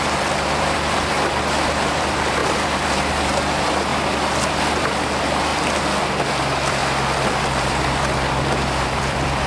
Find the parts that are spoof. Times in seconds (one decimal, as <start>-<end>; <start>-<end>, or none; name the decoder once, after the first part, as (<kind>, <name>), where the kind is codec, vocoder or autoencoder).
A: 0.0-3.9 (vocoder, BigVGAN v2); 4.8-5.5; 6.3-6.8; 7.4-9.5